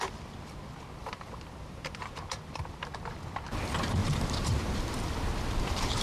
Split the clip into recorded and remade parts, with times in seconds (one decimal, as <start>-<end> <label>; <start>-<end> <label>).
0.0-1.0 recorded; 1.0-2.9 remade; 2.9-4.0 recorded; 4.0-4.9 remade; 4.9-6.0 recorded